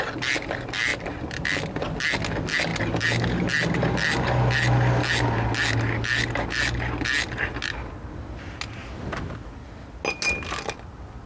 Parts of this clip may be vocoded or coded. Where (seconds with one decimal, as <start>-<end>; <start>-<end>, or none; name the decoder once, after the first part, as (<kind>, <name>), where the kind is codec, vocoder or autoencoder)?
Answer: none